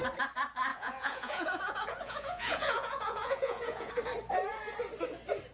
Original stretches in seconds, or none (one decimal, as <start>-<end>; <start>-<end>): 0.0-0.7; 3.9-5.5